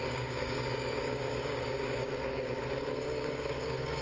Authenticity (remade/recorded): remade